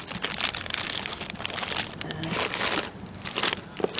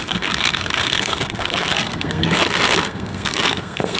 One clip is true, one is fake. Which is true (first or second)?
first